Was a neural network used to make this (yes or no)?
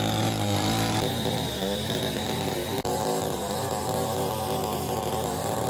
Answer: yes